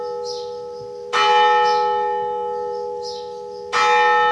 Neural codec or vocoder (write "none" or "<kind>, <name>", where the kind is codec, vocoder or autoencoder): none